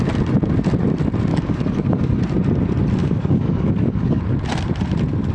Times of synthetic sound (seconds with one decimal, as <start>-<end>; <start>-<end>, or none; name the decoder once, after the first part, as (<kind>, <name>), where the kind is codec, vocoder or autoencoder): 1.3-2.2 (codec, DAC); 3.0-4.2